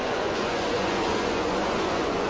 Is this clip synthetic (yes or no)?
yes